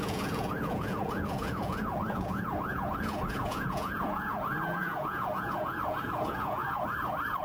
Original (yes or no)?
no